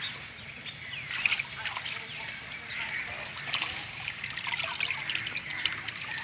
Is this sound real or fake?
real